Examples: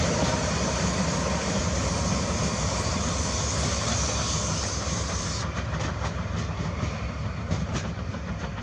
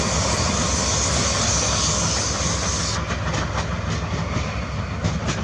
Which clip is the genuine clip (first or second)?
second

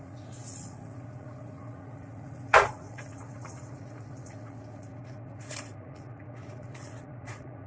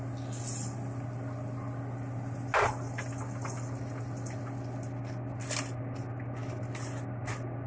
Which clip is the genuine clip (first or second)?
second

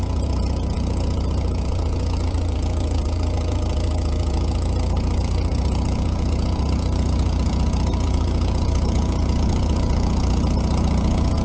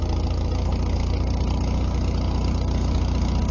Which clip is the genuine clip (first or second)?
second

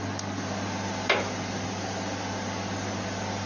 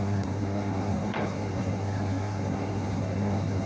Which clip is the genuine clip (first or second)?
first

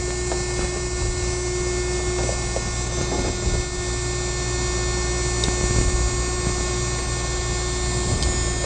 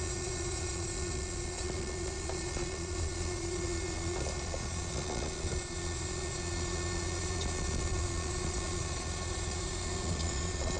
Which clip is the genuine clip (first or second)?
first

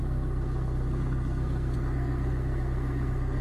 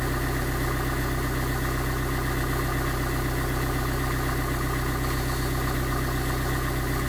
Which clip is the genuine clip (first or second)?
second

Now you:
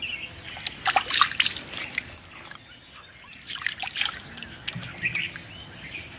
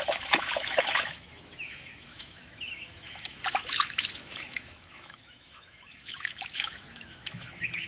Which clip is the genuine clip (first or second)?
first